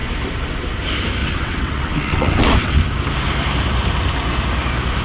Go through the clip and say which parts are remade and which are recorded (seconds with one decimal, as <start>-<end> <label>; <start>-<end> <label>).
0.0-1.2 recorded; 1.2-2.8 remade; 2.8-5.0 recorded